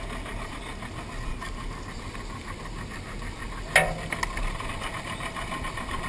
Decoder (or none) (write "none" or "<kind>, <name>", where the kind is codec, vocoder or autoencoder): none